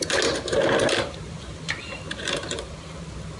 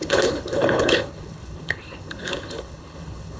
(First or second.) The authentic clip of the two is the first